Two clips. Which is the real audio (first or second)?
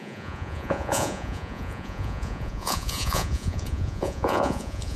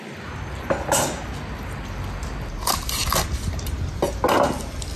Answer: second